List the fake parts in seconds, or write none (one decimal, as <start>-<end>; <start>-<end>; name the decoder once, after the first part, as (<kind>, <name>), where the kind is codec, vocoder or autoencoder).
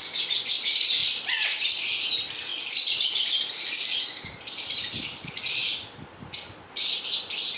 none